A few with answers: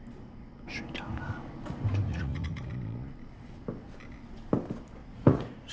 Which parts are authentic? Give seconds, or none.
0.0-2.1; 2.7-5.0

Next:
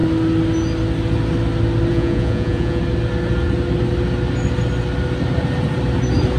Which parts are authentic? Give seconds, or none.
0.0-1.9; 2.8-6.4

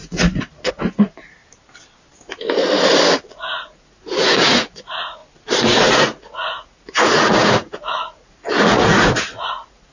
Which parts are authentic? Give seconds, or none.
1.4-3.3; 5.2-5.8

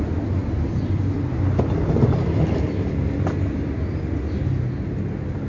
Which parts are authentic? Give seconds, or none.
0.0-5.5